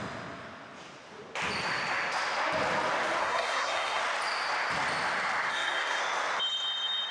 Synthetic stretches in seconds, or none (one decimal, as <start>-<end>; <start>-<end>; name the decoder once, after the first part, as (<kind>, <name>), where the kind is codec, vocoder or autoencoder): 3.2-4.0 (codec, SNAC); 5.5-6.0

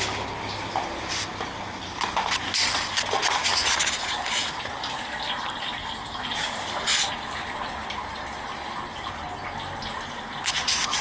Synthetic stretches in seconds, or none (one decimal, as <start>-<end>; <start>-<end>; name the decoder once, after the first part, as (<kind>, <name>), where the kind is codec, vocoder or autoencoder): none

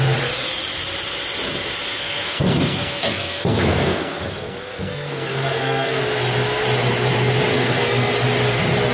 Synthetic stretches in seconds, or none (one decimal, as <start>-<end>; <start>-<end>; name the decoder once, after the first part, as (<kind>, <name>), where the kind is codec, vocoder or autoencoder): 1.9-6.0 (codec, SNAC); 7.5-8.1

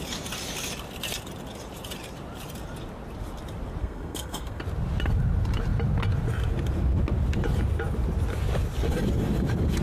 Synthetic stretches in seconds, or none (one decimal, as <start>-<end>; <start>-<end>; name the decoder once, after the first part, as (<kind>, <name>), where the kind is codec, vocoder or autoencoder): 3.8-4.6 (codec, SNAC)